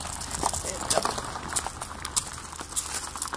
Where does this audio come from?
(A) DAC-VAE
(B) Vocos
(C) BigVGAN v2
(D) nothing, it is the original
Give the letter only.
D